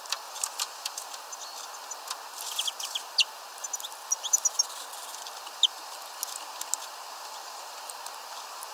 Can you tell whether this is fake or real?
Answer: real